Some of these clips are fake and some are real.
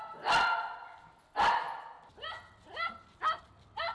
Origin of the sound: real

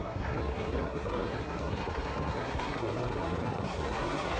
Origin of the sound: fake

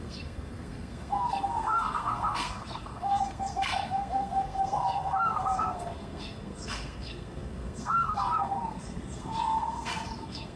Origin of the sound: fake